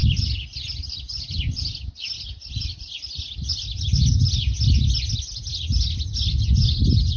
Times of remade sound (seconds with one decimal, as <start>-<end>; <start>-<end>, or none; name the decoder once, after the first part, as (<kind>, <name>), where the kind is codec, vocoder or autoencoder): none